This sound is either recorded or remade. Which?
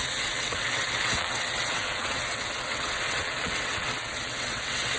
remade